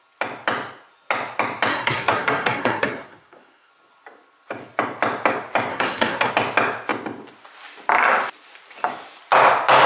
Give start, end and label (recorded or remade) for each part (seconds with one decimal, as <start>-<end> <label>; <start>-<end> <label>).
0.0-1.7 recorded; 1.7-3.7 remade; 3.7-5.7 recorded; 5.7-6.3 remade; 6.3-9.9 recorded